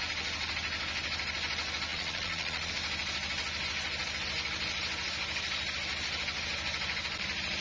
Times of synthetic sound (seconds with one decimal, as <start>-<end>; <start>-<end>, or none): 1.9-2.7